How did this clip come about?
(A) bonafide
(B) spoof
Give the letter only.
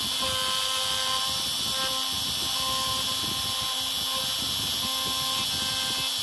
A